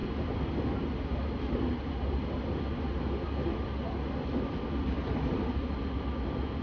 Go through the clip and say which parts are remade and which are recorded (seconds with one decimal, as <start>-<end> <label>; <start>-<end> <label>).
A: 0.0-6.6 recorded